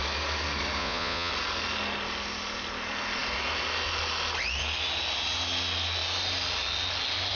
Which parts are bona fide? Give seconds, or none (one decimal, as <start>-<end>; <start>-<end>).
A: 0.0-0.8; 1.3-7.3